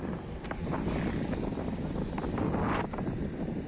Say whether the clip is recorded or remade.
recorded